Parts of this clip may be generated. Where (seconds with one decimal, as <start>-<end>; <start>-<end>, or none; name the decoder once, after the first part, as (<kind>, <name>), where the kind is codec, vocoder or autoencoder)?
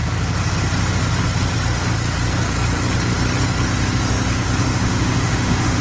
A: 4.6-5.8 (autoencoder, DAC-VAE)